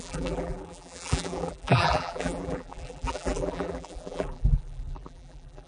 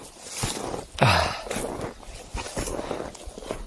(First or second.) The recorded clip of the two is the second